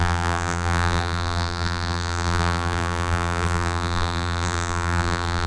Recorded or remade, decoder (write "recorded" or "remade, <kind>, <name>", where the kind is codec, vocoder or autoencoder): remade, vocoder, BigVGAN v2